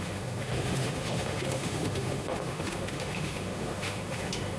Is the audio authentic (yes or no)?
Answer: no